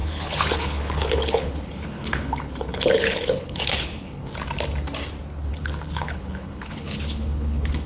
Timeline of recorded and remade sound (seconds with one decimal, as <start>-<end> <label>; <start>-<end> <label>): 0.0-4.3 remade; 4.3-5.5 recorded; 5.5-7.9 remade